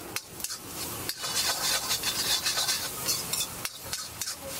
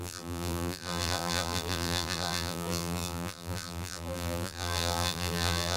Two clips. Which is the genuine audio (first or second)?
first